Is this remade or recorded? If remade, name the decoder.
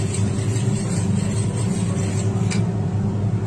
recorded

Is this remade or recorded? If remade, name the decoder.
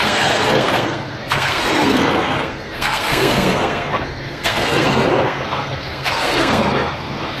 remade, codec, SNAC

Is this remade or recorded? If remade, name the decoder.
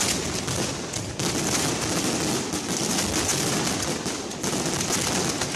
recorded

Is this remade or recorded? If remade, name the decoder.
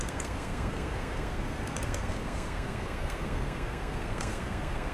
remade, codec, SNAC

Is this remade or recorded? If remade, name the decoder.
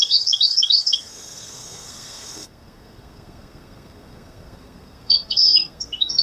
remade, codec, SNAC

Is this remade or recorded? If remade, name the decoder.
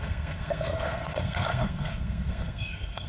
remade, codec, SNAC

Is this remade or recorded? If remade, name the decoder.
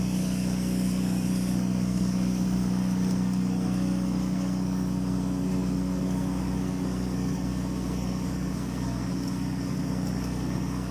remade, codec, SNAC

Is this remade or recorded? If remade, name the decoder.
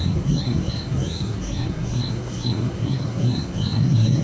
remade, codec, SNAC